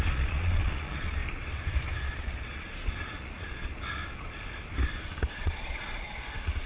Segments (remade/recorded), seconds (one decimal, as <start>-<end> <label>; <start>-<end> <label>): 0.0-1.2 remade; 1.2-2.0 recorded; 2.0-3.7 remade; 3.7-5.3 recorded; 5.3-6.7 remade